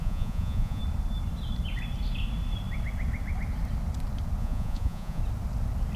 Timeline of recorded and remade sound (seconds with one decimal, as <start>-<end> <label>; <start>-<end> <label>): 0.0-0.8 remade; 0.8-4.4 recorded; 4.4-5.2 remade; 5.2-6.0 recorded